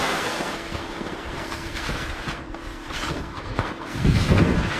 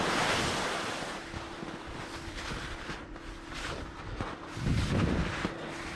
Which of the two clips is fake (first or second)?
first